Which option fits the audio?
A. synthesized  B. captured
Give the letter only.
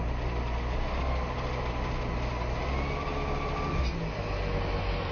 B